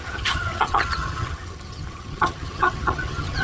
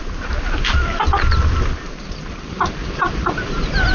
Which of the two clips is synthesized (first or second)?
first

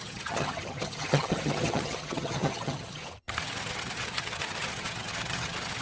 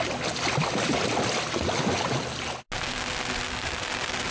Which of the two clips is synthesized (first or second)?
first